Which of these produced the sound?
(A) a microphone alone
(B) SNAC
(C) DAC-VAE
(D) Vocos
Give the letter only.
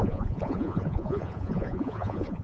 D